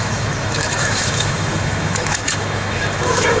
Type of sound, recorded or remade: remade